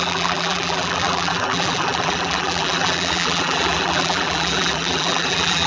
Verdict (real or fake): fake